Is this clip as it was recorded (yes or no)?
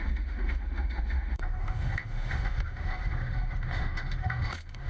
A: no